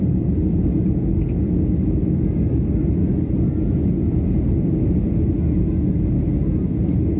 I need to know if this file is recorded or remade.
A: recorded